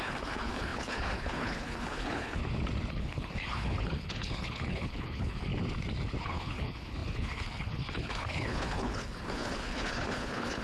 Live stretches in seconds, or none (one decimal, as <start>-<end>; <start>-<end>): 2.4-2.9; 5.5-6.2